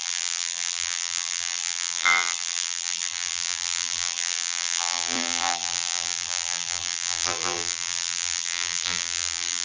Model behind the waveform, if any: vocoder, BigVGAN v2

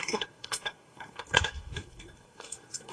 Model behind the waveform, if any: codec, SNAC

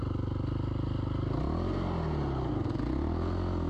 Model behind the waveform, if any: none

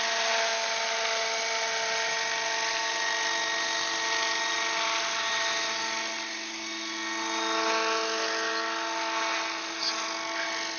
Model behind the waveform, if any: none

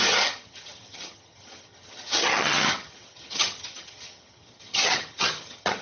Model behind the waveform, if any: vocoder, HiFi-GAN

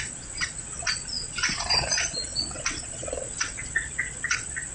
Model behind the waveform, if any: vocoder, Vocos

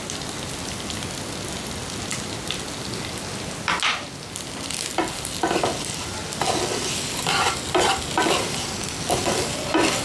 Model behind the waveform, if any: none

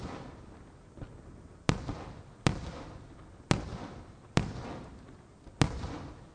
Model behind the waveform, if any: none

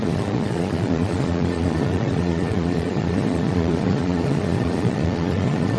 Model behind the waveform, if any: vocoder, Vocos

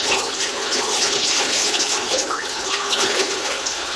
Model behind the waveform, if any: codec, HILCodec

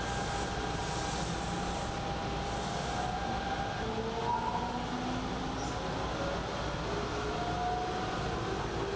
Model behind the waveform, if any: none